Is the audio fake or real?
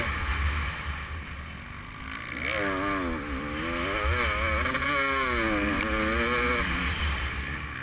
real